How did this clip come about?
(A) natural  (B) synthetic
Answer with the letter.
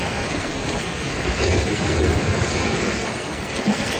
B